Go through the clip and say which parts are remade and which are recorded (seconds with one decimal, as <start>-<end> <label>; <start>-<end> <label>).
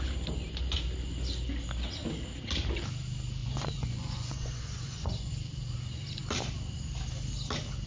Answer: 0.0-3.4 recorded; 3.4-5.3 remade; 5.3-7.9 recorded